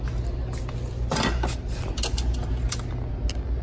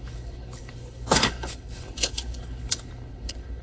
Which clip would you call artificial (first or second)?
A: second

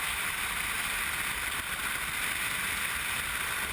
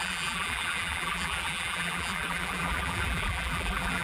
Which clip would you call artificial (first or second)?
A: second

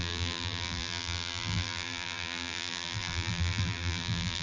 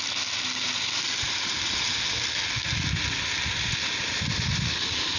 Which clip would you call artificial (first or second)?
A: first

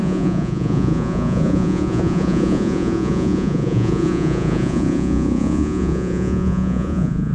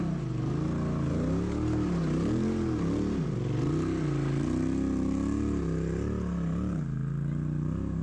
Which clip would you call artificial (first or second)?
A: first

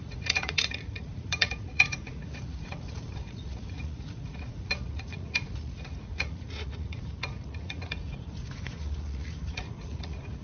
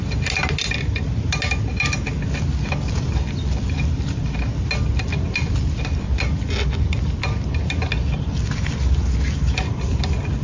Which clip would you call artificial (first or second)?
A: first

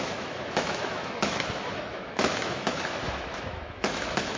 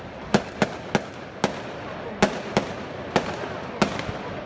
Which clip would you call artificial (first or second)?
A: first